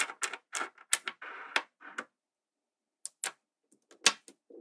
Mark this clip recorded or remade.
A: recorded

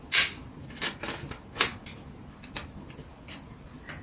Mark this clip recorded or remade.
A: recorded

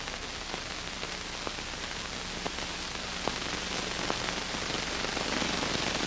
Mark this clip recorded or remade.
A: recorded